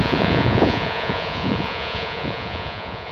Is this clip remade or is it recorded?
remade